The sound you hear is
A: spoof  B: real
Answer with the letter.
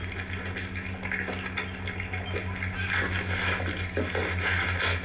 B